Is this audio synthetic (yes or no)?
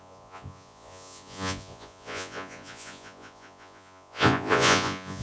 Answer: yes